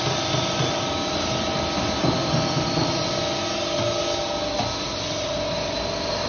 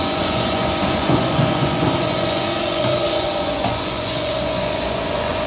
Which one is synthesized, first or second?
second